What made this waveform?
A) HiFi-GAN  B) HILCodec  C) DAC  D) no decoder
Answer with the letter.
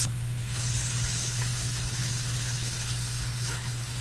B